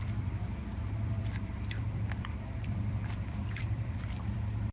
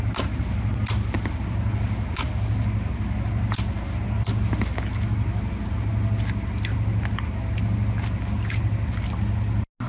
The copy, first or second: first